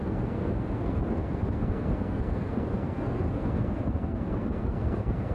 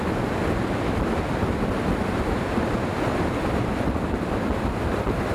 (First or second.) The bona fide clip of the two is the second